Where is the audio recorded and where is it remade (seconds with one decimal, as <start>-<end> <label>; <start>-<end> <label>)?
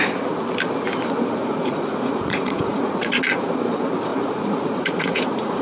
0.0-1.4 recorded; 1.4-3.2 remade; 3.2-4.1 recorded; 4.1-5.6 remade